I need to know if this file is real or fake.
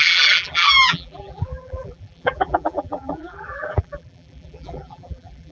fake